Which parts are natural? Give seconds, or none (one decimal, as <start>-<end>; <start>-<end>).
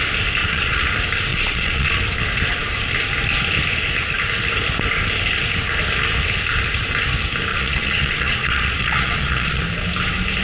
0.0-0.4; 0.9-1.3; 2.0-7.5; 9.6-10.4